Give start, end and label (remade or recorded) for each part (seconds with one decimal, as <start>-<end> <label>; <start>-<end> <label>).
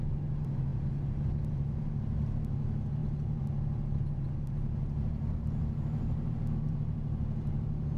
0.0-8.0 remade